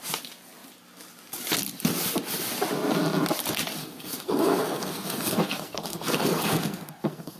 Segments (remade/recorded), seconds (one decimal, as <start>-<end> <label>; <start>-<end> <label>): 0.0-3.8 recorded; 3.8-7.4 remade

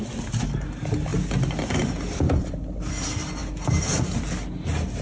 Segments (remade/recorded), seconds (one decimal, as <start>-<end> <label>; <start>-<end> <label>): 0.0-5.0 recorded

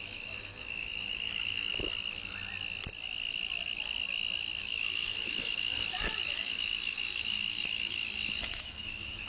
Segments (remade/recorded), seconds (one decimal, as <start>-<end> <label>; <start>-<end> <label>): 0.0-1.7 remade; 1.7-4.6 recorded; 4.6-9.3 remade

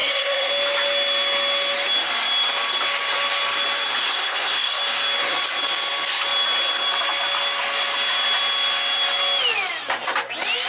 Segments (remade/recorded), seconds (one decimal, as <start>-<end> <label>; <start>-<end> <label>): 0.0-0.5 remade; 0.5-4.0 recorded; 4.0-4.8 remade; 4.8-10.7 recorded

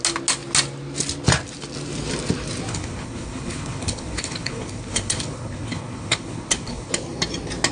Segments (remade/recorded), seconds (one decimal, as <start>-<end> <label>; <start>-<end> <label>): 0.0-2.7 recorded; 2.7-6.9 remade; 6.9-7.7 recorded